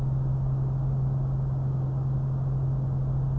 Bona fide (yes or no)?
yes